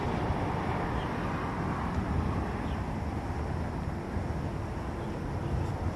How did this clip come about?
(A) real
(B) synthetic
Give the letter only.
A